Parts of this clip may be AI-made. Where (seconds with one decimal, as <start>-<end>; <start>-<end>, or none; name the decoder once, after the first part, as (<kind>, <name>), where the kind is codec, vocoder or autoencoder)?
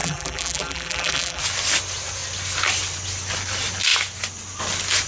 0.0-1.4 (vocoder, BigVGAN v2)